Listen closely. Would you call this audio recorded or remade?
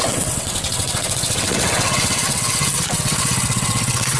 remade